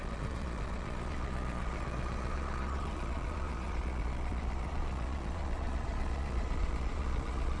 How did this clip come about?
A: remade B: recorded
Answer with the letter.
A